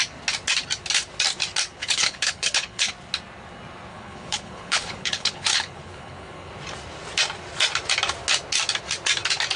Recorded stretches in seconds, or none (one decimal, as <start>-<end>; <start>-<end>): 0.0-1.8; 2.9-3.9; 6.5-9.6